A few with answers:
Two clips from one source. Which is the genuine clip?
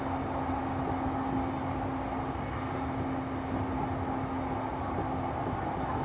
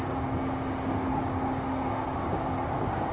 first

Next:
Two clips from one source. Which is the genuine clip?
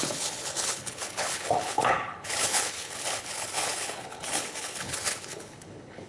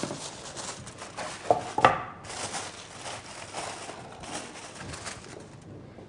second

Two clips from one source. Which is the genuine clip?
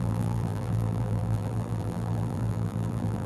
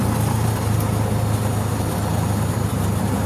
second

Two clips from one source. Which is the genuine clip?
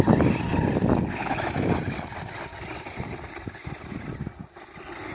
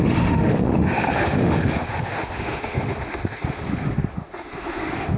first